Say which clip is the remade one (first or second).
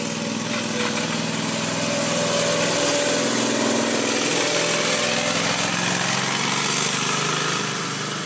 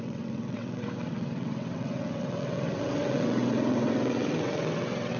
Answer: second